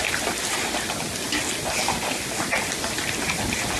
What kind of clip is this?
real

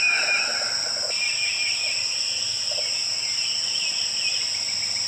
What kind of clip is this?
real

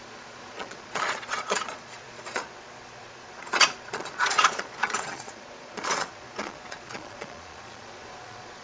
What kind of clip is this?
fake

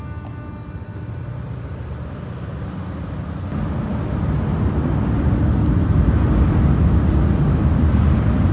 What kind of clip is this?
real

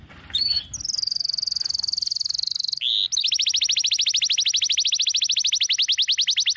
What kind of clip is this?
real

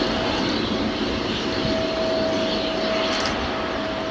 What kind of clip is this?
real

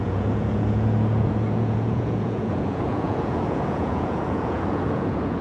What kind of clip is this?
fake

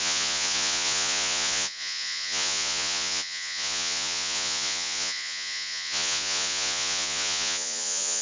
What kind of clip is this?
fake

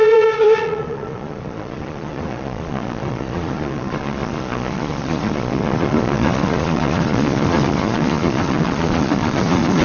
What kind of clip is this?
fake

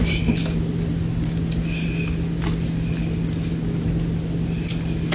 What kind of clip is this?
real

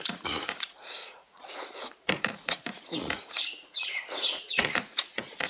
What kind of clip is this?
fake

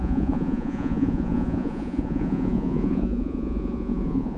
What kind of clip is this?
fake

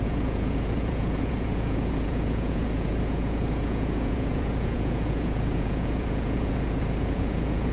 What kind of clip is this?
fake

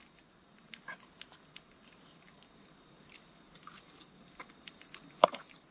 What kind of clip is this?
real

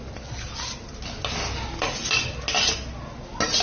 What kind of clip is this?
real